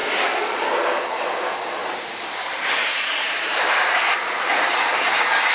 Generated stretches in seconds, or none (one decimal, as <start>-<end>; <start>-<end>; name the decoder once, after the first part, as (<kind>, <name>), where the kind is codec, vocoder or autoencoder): 1.8-4.7 (vocoder, BigVGAN v2)